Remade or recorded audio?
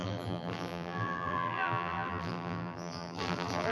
remade